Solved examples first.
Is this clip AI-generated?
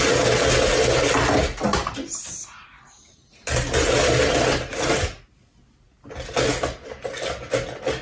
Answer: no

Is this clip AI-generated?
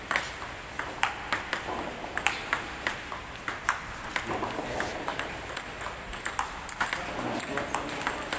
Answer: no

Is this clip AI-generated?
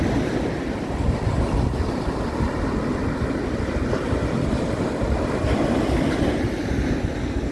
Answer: no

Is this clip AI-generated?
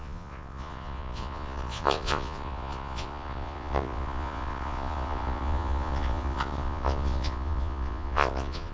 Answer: yes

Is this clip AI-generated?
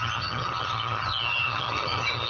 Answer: yes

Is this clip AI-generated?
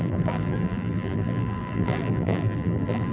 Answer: yes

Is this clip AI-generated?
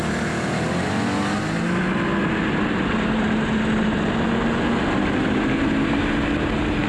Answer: no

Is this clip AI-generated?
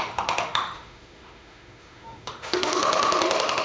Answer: yes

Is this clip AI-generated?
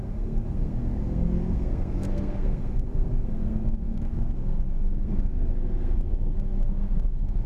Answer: yes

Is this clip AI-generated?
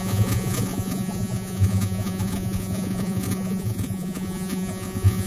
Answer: yes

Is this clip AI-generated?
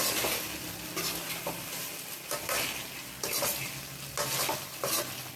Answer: no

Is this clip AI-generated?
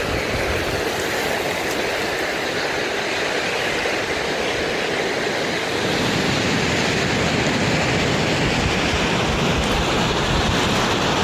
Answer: no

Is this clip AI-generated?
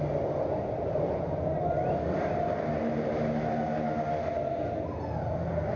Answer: no